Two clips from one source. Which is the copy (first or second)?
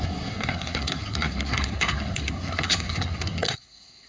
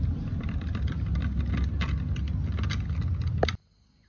first